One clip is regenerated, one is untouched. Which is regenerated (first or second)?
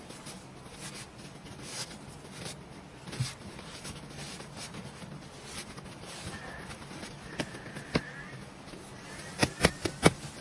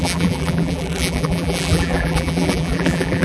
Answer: second